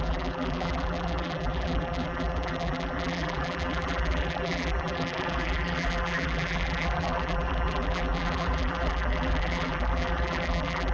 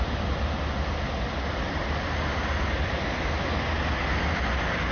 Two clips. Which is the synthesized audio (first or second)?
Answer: first